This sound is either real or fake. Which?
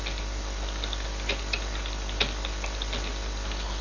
real